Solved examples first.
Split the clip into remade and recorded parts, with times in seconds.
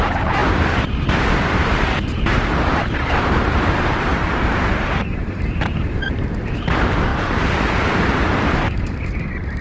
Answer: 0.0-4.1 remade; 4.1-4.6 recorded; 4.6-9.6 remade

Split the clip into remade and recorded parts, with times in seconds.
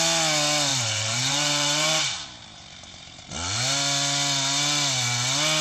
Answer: 0.0-0.7 recorded; 0.7-3.2 remade; 3.2-5.6 recorded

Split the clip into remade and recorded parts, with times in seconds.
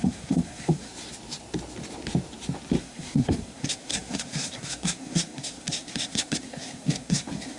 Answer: 0.0-0.9 remade; 0.9-2.8 recorded; 2.8-7.6 remade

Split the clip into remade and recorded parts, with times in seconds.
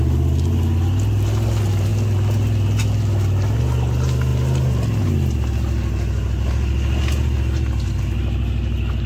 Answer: 0.0-9.1 recorded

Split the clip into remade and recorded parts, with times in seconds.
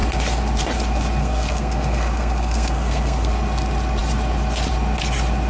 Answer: 0.0-1.2 recorded; 1.2-3.3 remade; 3.3-5.5 recorded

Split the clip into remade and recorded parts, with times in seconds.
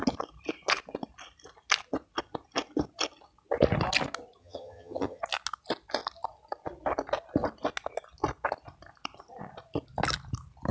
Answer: 0.0-4.4 recorded; 4.4-5.2 remade; 5.2-10.7 recorded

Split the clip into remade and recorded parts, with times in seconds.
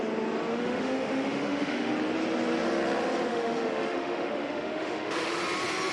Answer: 0.0-0.5 recorded; 0.5-1.9 remade; 1.9-3.3 recorded; 3.3-5.4 remade; 5.4-5.9 recorded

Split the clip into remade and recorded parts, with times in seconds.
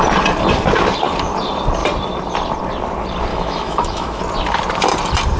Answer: 0.0-3.3 recorded; 3.3-4.2 remade; 4.2-5.4 recorded